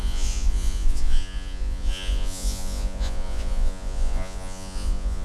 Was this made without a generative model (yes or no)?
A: no